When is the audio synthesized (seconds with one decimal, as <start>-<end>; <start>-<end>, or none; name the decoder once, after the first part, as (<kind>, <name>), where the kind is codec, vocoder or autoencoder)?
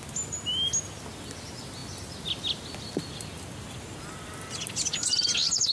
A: none